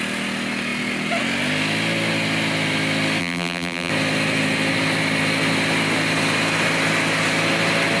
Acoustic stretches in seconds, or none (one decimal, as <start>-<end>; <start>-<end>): 0.0-3.2; 3.9-8.0